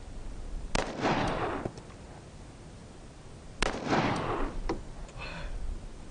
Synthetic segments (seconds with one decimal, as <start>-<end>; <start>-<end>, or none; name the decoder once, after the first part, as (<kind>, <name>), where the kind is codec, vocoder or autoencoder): none

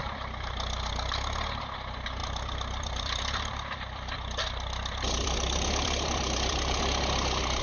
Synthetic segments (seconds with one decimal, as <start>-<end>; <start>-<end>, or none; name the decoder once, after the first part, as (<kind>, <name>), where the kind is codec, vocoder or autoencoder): 0.0-0.9 (vocoder, BigVGAN v2); 2.2-6.8

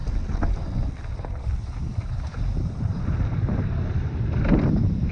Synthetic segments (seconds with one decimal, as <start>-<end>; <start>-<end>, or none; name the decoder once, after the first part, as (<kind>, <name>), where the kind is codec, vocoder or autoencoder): 0.9-2.5 (vocoder, BigVGAN v2)